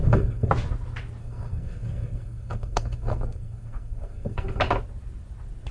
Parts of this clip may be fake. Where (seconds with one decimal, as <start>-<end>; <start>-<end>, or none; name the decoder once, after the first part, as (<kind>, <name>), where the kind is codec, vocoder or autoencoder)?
0.0-0.5 (codec, SNAC); 1.2-4.6